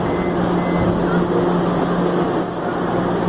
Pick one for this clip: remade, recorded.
recorded